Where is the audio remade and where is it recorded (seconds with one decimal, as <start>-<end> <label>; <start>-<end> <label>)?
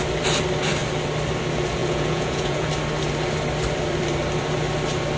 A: 0.0-1.8 recorded; 1.8-2.7 remade; 2.7-5.2 recorded